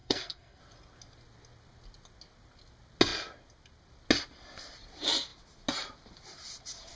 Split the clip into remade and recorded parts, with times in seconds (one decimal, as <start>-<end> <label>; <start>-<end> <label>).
0.0-0.6 remade; 0.6-7.0 recorded